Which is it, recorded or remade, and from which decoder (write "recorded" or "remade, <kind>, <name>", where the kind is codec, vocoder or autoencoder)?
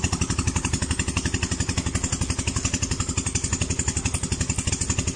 recorded